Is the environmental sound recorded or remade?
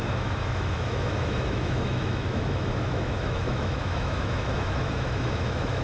remade